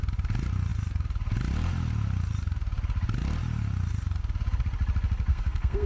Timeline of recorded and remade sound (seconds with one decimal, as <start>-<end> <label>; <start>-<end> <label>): 0.0-5.3 recorded; 5.3-5.9 remade